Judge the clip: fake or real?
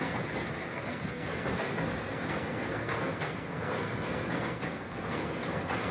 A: fake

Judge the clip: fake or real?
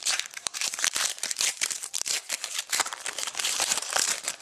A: fake